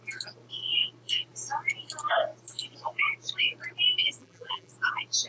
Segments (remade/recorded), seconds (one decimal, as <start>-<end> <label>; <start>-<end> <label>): 0.0-4.2 recorded; 4.2-4.7 remade; 4.7-5.3 recorded